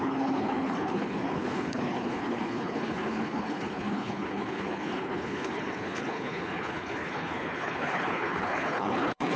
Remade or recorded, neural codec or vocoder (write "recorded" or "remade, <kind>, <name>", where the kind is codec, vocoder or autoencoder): remade, codec, HILCodec